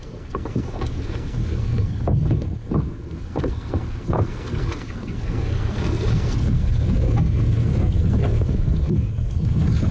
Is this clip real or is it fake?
fake